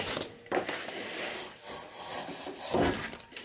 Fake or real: fake